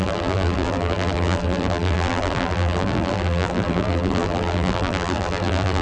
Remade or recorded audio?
remade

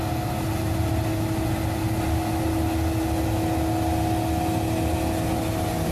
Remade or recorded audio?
recorded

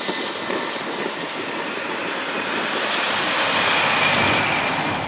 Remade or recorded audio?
recorded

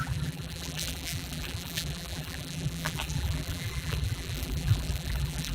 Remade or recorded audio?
remade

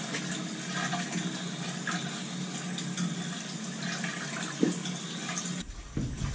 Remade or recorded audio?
recorded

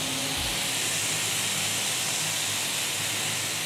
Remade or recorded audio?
recorded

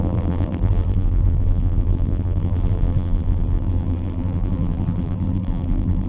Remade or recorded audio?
remade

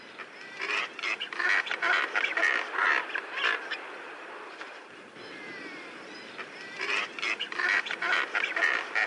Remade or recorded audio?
remade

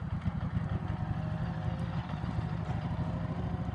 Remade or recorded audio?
recorded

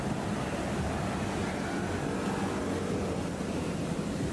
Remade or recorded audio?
recorded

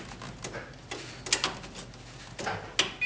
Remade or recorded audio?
recorded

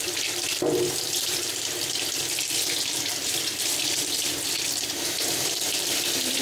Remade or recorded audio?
remade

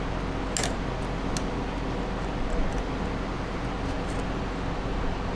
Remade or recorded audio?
recorded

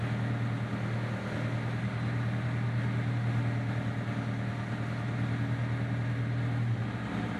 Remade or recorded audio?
recorded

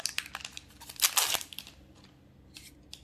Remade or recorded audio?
recorded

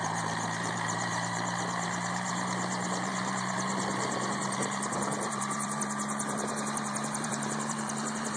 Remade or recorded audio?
remade